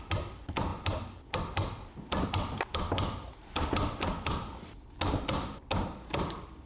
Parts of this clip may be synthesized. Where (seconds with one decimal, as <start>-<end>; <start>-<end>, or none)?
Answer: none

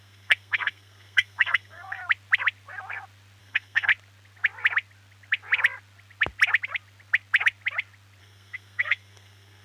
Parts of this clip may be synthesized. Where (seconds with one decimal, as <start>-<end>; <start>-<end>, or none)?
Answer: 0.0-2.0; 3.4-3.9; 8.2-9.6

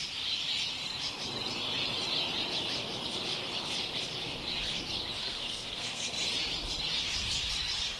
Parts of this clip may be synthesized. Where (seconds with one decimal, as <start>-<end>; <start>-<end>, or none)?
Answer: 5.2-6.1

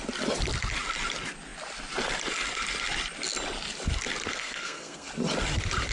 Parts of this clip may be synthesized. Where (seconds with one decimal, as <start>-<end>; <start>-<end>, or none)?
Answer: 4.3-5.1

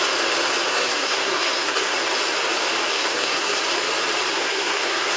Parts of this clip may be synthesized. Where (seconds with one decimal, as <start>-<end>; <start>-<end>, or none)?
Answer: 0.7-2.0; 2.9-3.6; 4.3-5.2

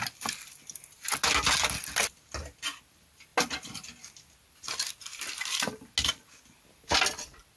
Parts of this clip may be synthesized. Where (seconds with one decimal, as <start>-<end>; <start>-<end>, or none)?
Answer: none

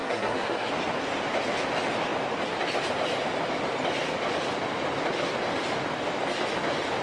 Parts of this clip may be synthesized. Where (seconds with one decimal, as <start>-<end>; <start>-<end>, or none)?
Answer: 0.0-0.7